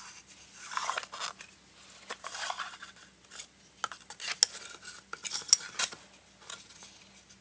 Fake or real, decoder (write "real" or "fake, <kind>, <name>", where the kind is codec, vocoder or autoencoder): real